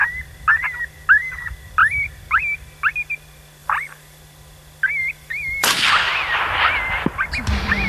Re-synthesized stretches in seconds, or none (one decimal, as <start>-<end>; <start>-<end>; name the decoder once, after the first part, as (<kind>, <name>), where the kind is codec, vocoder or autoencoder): 3.6-4.2 (vocoder, BigVGAN v2); 5.0-5.9